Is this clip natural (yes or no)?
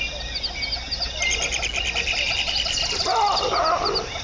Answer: yes